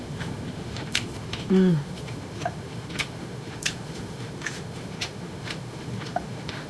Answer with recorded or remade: remade